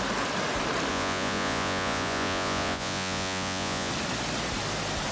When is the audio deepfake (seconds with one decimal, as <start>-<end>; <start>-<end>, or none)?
0.9-3.9